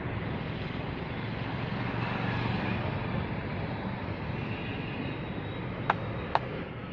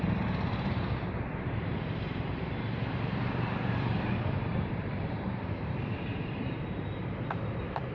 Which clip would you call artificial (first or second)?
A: second